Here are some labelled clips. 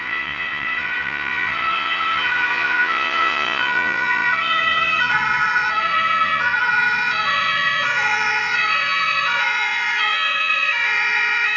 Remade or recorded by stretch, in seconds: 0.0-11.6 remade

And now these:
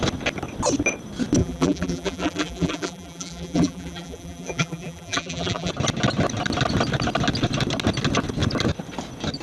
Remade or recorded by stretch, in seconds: 0.0-1.4 recorded; 1.4-5.7 remade; 5.7-9.4 recorded

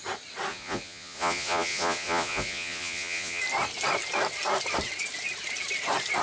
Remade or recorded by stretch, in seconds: 0.0-0.5 recorded; 0.5-3.4 remade; 3.4-6.2 recorded

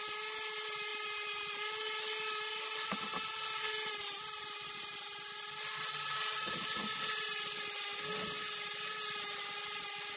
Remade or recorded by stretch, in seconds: 0.0-10.2 recorded